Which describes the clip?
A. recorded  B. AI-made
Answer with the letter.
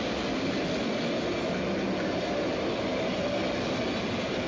A